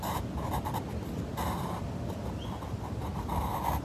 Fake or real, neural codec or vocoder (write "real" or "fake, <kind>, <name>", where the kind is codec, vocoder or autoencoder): real